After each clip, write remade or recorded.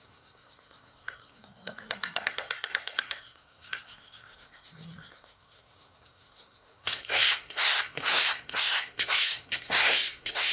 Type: remade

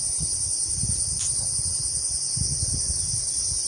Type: recorded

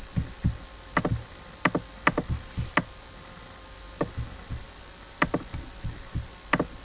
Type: recorded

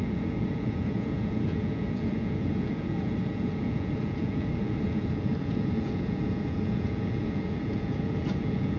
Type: remade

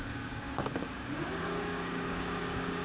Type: remade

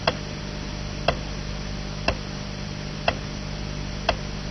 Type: recorded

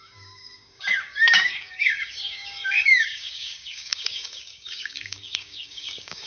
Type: remade